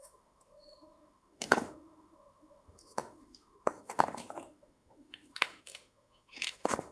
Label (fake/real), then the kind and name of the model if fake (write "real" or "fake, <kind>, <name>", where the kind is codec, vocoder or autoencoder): fake, autoencoder, DAC-VAE